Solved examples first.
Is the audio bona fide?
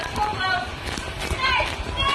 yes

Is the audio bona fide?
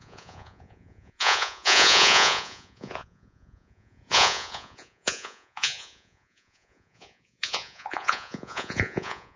no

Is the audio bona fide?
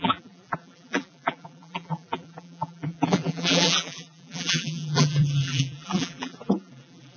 no